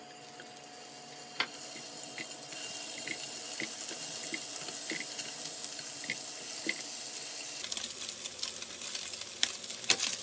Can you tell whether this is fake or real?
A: real